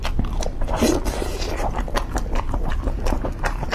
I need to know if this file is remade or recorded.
remade